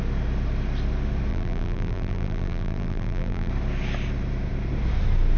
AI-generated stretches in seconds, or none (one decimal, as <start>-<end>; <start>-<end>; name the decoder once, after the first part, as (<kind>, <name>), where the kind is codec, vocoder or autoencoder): 1.3-3.5 (vocoder, BigVGAN v2)